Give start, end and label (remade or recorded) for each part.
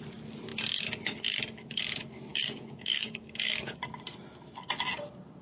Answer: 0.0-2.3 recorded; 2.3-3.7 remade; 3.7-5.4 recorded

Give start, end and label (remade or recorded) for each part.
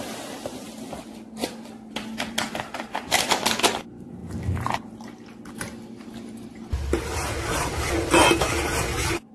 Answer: 0.0-1.4 recorded; 1.4-2.5 remade; 2.5-9.3 recorded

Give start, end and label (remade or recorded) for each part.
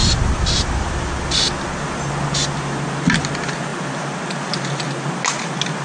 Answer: 0.0-5.8 recorded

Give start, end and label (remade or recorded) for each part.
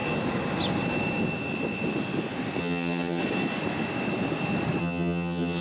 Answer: 0.0-2.6 recorded; 2.6-3.2 remade; 3.2-4.8 recorded; 4.8-5.6 remade